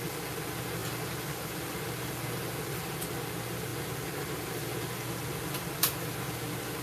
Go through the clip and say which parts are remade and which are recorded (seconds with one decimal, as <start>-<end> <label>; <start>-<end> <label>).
0.0-6.8 recorded